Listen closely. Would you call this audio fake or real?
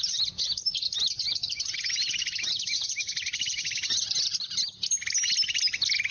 real